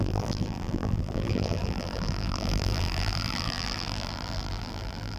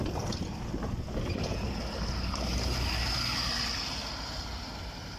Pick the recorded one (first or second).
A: second